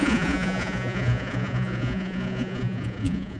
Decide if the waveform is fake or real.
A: fake